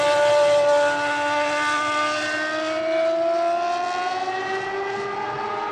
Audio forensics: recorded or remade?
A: recorded